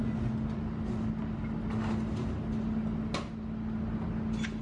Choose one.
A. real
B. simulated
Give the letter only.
A